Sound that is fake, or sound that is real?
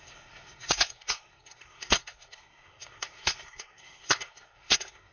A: fake